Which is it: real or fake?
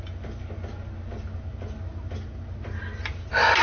real